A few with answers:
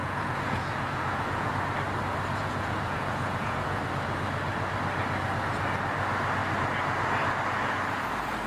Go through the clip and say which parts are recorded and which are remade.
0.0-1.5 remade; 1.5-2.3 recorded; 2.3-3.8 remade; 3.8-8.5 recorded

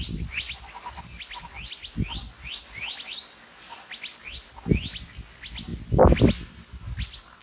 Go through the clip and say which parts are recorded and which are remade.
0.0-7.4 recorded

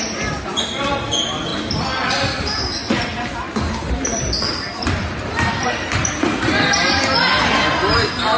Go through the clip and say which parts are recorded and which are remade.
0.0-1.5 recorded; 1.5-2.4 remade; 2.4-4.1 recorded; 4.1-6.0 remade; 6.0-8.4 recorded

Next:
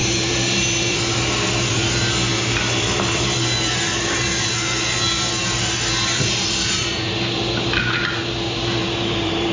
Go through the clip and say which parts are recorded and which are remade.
0.0-9.5 remade

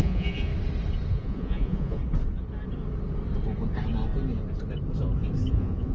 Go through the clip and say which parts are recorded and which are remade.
0.0-0.5 remade; 0.5-1.1 recorded; 1.1-2.0 remade; 2.0-5.5 recorded; 5.5-5.9 remade